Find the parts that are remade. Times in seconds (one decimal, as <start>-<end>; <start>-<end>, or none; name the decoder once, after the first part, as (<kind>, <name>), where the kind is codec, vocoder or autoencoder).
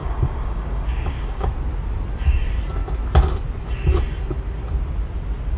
0.0-1.5 (codec, DAC)